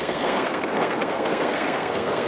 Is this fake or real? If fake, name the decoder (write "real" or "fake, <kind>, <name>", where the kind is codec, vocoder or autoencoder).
fake, codec, SNAC